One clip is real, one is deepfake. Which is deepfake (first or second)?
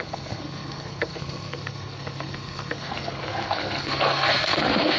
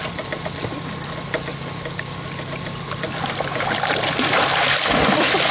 first